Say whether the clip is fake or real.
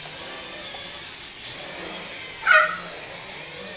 real